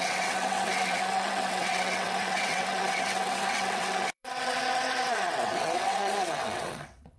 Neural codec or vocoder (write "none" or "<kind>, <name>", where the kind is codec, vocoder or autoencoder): vocoder, WaveNeXt